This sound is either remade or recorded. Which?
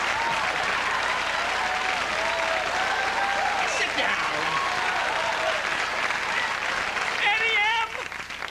recorded